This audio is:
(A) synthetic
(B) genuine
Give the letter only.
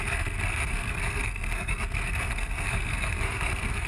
A